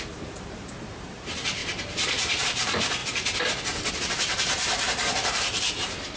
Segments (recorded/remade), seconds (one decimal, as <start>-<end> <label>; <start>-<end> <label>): 0.0-1.6 remade; 1.6-2.4 recorded; 2.4-6.2 remade